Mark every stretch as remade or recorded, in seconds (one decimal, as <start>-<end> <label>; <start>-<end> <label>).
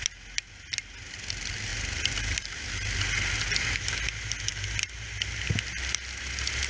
0.0-6.7 recorded